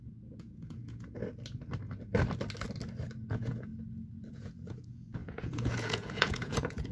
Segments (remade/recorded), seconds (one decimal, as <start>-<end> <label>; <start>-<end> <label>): 0.0-1.2 remade; 1.2-3.3 recorded; 3.3-3.7 remade; 3.7-4.3 recorded; 4.3-6.9 remade